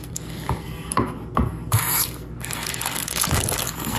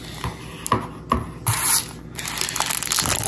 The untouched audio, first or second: second